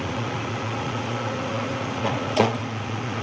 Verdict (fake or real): fake